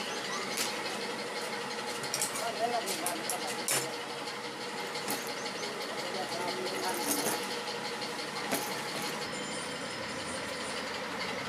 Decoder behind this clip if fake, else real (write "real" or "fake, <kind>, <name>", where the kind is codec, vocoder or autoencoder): real